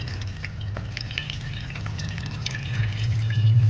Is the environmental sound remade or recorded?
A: recorded